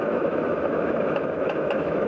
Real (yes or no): no